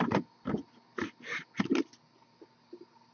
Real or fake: real